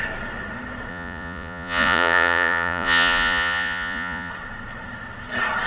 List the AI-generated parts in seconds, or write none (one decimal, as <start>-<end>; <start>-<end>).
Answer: 0.9-4.3